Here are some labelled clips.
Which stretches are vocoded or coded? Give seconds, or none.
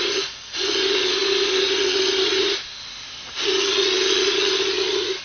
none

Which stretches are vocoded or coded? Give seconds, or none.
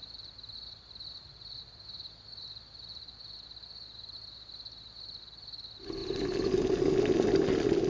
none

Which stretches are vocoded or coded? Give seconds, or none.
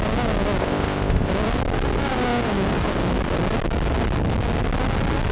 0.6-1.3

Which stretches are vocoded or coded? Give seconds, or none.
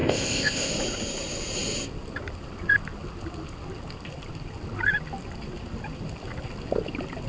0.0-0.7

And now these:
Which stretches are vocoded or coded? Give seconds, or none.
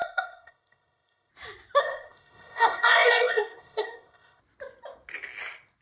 0.0-1.3; 1.8-4.4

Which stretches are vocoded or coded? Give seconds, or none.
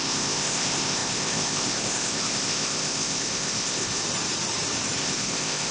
0.0-4.0; 5.0-5.7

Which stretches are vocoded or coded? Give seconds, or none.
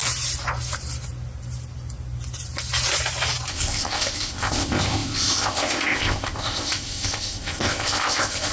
3.5-8.5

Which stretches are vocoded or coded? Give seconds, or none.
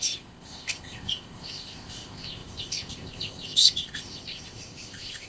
0.0-5.3